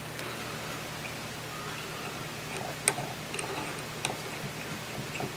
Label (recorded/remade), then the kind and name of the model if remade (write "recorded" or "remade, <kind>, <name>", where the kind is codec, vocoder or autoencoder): recorded